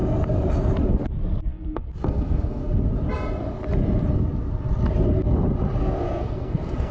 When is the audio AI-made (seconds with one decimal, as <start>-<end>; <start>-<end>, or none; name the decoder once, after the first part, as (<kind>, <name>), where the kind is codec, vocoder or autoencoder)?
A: 1.5-2.8 (codec, SNAC); 5.8-6.9